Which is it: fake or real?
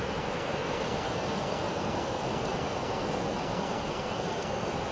fake